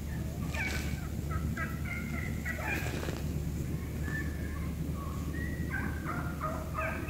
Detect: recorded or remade recorded